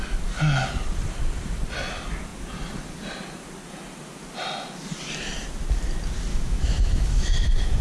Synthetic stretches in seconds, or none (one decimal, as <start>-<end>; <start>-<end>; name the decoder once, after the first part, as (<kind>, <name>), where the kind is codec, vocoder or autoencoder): 6.3-7.8 (autoencoder, DAC-VAE)